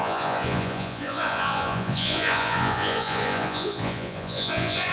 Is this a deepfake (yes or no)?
yes